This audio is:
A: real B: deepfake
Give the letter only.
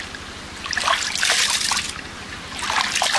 A